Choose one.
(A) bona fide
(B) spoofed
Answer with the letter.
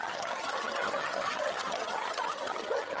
B